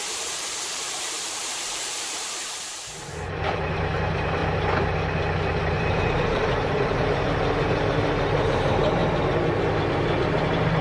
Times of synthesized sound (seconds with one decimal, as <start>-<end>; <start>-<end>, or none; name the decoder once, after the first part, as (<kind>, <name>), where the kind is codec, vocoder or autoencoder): 0.0-4.4 (vocoder, BigVGAN v2); 5.6-9.0; 10.2-10.8

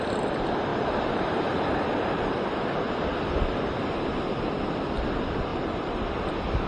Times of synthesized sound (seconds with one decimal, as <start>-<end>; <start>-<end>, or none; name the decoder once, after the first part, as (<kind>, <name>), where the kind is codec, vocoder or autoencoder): 0.7-3.7 (vocoder, BigVGAN v2); 5.5-6.1